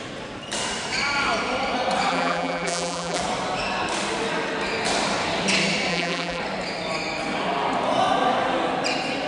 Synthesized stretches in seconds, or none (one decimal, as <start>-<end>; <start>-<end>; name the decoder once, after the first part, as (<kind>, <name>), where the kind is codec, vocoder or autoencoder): 2.1-3.2 (vocoder, BigVGAN v2); 5.9-6.4